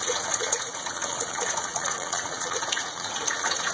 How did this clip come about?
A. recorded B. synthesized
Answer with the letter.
B